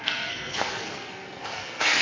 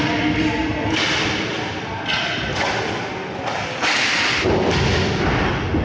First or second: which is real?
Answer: second